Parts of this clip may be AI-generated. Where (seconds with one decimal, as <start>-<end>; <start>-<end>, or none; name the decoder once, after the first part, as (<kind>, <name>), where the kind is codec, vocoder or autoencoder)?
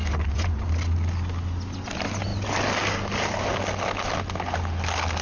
0.0-0.7 (vocoder, Vocos)